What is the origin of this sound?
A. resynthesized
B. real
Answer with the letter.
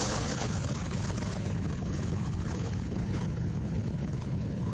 A